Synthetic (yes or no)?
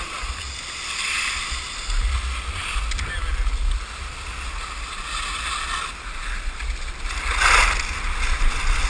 no